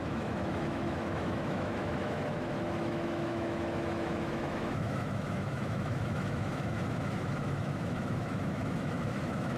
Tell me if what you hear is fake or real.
fake